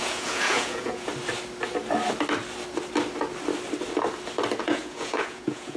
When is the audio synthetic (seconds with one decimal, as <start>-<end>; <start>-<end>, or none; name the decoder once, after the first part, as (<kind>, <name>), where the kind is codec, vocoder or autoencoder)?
0.0-1.1 (vocoder, Vocos); 4.6-5.8